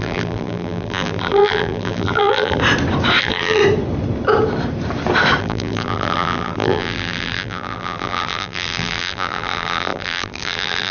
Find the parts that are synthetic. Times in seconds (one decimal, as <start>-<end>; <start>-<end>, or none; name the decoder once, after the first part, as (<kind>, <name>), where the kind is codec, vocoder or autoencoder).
0.0-2.6 (vocoder, BigVGAN v2); 3.2-3.6; 5.4-10.9